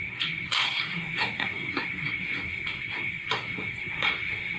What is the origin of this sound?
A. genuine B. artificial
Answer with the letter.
B